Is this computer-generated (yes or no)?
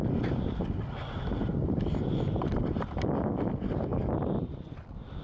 no